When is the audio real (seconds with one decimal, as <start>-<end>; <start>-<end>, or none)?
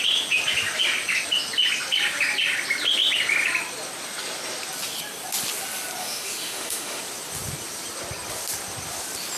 0.0-6.0; 7.0-9.4